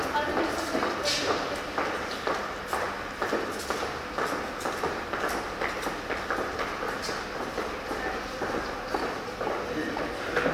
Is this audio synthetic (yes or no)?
no